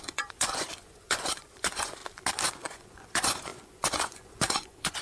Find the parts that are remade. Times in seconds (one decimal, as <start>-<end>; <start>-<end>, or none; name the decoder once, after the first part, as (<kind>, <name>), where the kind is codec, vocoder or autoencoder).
0.0-2.0 (vocoder, Vocos); 2.5-5.0